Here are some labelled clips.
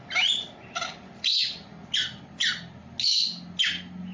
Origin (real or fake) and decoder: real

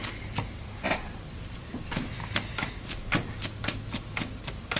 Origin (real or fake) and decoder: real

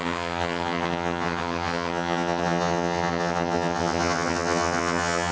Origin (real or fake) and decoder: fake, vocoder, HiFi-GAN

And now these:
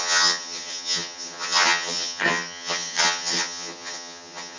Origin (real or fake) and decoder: fake, vocoder, HiFi-GAN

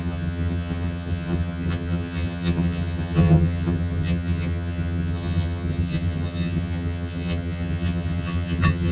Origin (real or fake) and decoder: fake, vocoder, HiFi-GAN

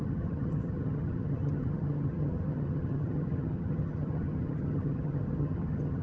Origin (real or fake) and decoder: fake, vocoder, HiFi-GAN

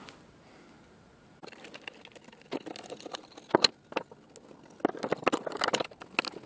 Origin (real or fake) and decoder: real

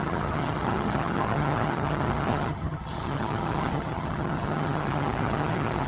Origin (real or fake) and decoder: fake, vocoder, HiFi-GAN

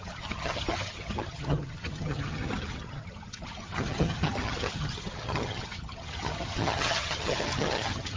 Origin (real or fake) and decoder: fake, vocoder, HiFi-GAN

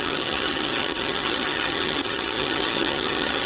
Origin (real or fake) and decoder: fake, vocoder, HiFi-GAN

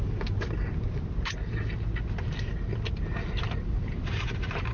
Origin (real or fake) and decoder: real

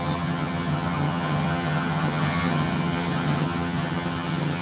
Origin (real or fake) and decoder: fake, vocoder, HiFi-GAN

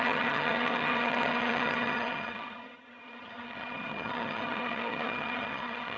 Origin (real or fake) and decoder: fake, vocoder, HiFi-GAN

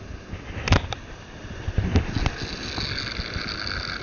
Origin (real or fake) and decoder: real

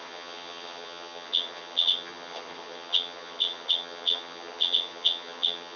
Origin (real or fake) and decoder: fake, vocoder, HiFi-GAN